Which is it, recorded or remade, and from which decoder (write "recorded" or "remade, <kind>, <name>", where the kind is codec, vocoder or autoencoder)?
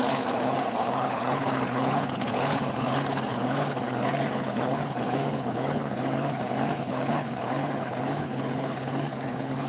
remade, codec, HILCodec